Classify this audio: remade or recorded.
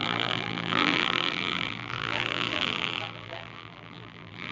remade